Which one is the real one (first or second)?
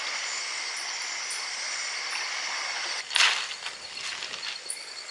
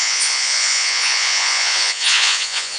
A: first